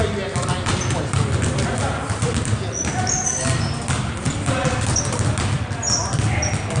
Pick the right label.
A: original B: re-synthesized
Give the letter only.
A